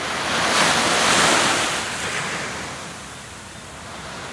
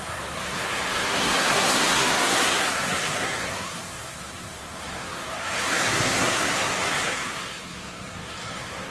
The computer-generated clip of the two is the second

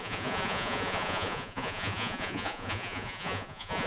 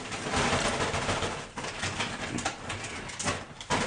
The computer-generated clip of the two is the first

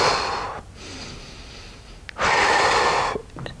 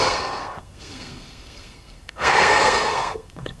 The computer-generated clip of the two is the second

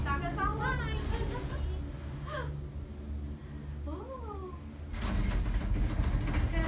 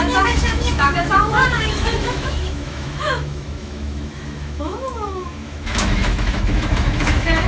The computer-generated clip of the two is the second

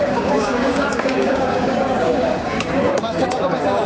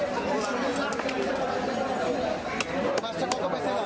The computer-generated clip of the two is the first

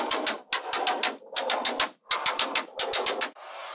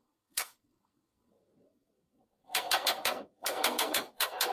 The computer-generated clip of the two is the second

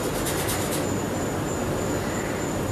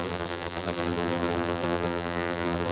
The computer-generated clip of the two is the second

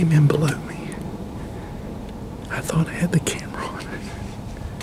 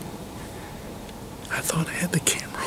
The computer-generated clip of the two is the second